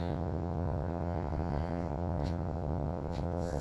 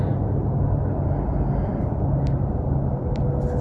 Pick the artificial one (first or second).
first